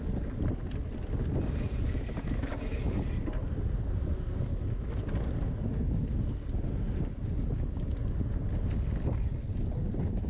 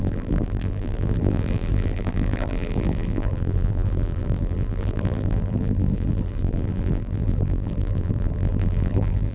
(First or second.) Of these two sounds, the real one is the first